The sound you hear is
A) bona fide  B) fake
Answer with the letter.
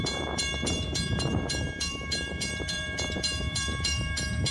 B